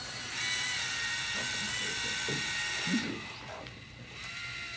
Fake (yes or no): no